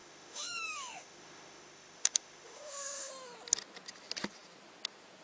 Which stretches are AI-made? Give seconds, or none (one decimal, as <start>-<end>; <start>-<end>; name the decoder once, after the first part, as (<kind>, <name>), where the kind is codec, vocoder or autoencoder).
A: 0.0-3.1 (autoencoder, DAC-VAE)